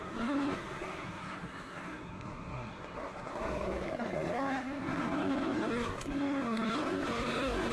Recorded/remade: remade